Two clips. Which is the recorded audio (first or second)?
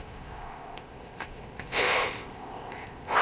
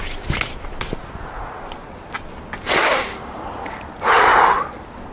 second